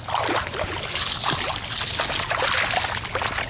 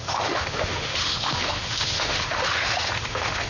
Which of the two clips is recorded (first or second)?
first